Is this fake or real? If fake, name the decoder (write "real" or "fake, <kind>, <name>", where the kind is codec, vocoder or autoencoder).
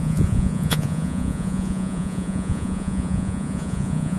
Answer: fake, vocoder, Vocos